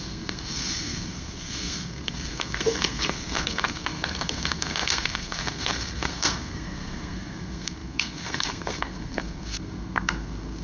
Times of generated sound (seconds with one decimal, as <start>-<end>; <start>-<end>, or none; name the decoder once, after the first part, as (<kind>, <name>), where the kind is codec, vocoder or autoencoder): 0.0-10.6 (codec, SNAC)